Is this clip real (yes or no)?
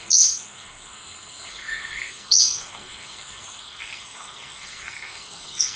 no